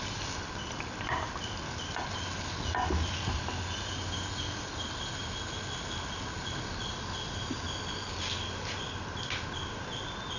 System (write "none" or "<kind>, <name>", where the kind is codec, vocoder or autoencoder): none